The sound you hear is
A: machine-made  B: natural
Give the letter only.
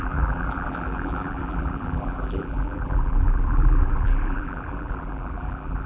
A